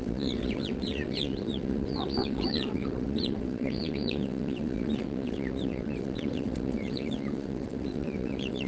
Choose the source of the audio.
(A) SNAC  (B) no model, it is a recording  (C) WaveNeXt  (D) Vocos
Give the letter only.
C